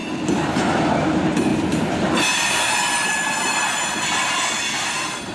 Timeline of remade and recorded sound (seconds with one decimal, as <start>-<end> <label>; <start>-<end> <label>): 0.0-5.3 recorded